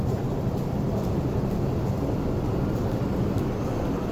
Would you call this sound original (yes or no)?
yes